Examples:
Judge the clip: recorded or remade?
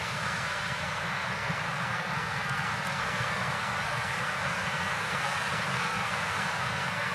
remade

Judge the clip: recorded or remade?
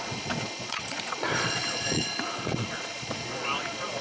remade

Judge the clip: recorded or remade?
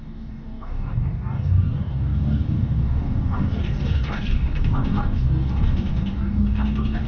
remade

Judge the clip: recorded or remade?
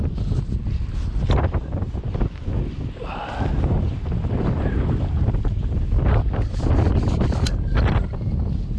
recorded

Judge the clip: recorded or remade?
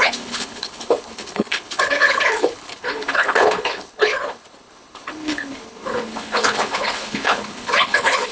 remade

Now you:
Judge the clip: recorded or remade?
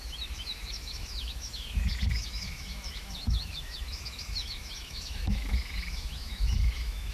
remade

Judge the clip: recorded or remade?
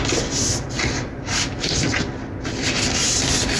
recorded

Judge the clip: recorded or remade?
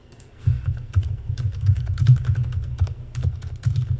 remade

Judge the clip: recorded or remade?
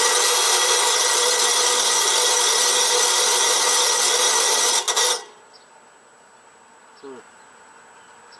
recorded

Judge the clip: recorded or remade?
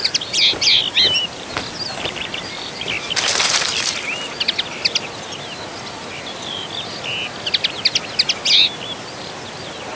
recorded